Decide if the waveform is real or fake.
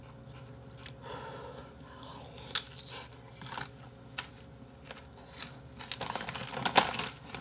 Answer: real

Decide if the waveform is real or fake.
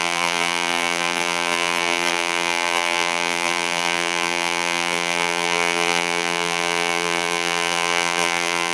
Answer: fake